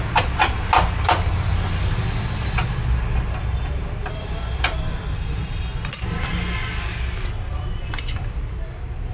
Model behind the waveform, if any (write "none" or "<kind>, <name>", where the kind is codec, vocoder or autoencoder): none